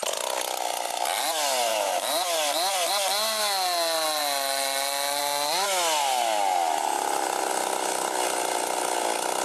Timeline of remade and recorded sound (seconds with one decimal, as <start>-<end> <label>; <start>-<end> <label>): 0.0-1.7 recorded; 1.7-2.9 remade; 2.9-9.4 recorded